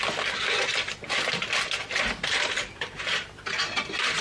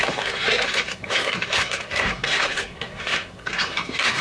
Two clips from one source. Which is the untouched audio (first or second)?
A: first